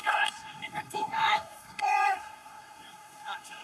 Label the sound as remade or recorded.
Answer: remade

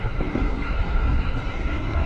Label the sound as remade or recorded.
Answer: remade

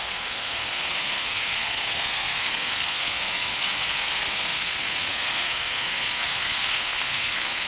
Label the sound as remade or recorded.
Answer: remade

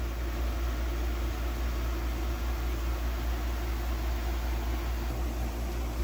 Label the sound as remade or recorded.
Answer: recorded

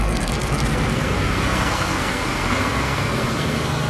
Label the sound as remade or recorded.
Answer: remade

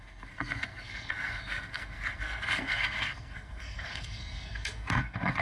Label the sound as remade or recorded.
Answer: remade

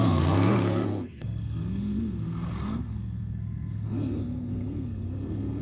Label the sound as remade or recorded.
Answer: remade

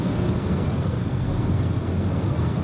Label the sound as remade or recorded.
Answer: remade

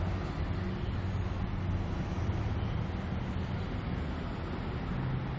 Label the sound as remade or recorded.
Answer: recorded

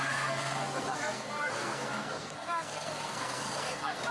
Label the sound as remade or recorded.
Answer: remade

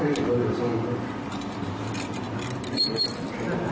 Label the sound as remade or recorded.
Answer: recorded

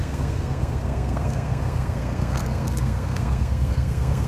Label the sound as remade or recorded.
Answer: remade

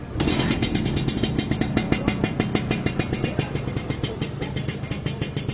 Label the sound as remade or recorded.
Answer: recorded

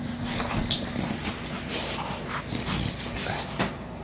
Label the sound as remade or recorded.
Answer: recorded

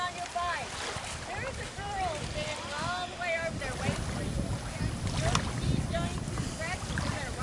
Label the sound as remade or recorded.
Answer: recorded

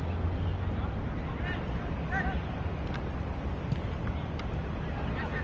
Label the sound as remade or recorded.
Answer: recorded